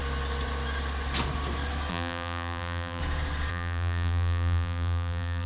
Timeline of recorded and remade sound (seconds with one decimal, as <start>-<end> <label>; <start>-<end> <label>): 0.0-1.9 recorded; 1.9-3.0 remade; 3.0-3.5 recorded; 3.5-5.5 remade